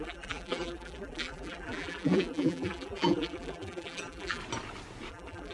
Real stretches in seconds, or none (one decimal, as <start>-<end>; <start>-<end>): 4.4-5.1